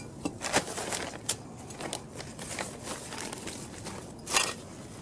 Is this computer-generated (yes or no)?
no